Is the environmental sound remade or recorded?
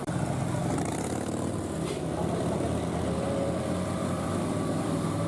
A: remade